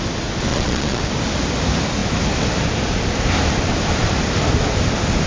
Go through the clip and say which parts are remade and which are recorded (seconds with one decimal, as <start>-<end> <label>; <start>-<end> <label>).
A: 0.0-0.5 recorded; 0.5-1.0 remade; 1.0-5.3 recorded